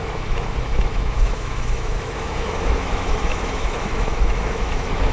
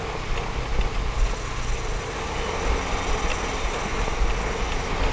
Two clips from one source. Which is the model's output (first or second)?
first